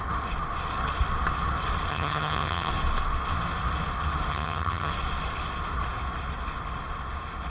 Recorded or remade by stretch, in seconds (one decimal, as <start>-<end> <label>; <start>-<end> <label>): 0.0-1.9 recorded; 1.9-2.7 remade; 2.7-4.3 recorded; 4.3-4.9 remade; 4.9-7.5 recorded